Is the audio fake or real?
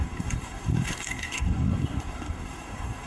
fake